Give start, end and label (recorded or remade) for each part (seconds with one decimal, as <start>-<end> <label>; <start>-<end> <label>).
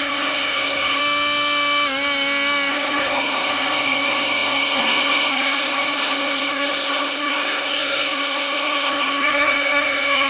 0.0-1.0 remade; 1.0-2.7 recorded; 2.7-10.3 remade